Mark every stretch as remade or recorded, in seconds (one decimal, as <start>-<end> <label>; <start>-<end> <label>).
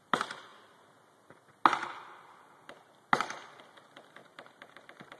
0.0-4.2 recorded; 4.2-5.2 remade